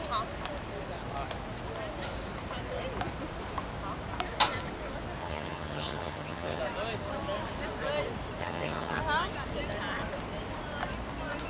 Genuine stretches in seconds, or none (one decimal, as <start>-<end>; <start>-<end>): 0.0-5.2; 6.6-8.4; 9.0-11.5